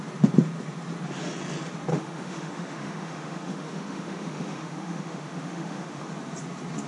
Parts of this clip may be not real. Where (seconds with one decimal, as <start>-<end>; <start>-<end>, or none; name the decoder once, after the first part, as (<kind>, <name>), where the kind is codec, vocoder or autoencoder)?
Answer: 1.9-6.0 (autoencoder, DAC-VAE)